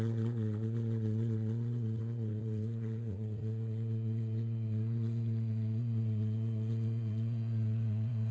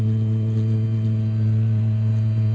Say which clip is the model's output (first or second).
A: first